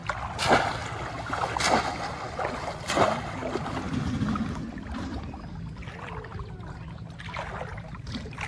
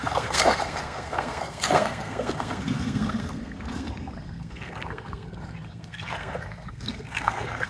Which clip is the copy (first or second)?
second